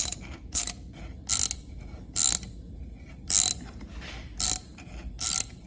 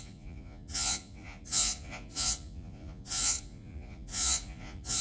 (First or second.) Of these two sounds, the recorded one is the first